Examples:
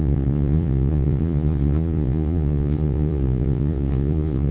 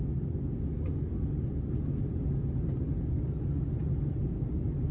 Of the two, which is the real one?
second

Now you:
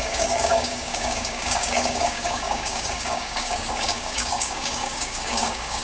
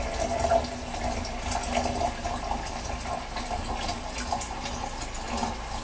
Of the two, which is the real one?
second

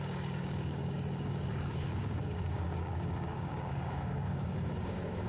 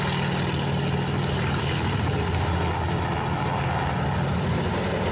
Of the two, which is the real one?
second